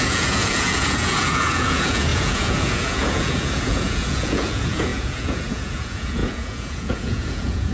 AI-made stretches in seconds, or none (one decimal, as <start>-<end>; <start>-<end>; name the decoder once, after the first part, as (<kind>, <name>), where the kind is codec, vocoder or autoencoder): 0.0-7.7 (vocoder, Vocos)